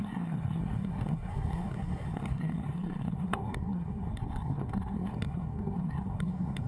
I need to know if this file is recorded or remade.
remade